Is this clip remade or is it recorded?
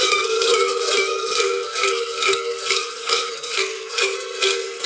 remade